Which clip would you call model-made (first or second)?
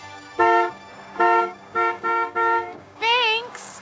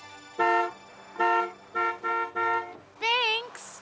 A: first